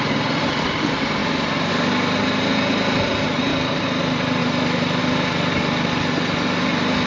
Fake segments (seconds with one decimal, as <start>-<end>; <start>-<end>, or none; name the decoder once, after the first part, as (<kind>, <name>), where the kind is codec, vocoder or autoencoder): 1.2-1.7 (vocoder, BigVGAN v2); 4.4-5.0